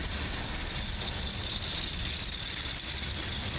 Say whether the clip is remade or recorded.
recorded